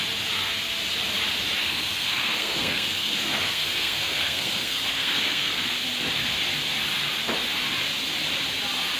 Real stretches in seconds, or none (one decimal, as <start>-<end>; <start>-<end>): 0.0-1.6; 5.7-9.0